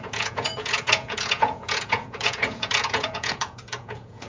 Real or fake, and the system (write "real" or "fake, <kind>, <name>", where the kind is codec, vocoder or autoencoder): fake, vocoder, Vocos